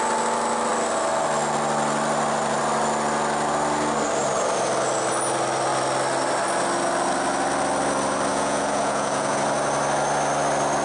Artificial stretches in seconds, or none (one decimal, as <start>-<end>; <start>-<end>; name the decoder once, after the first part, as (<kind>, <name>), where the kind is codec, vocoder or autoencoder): 8.3-9.4 (vocoder, Vocos)

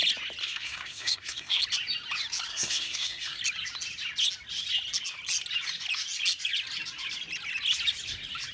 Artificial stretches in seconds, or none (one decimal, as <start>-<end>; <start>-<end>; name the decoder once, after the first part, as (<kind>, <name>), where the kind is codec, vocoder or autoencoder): 0.4-1.6 (codec, SNAC); 2.5-3.4